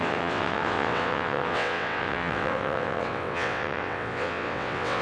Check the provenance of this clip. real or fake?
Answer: fake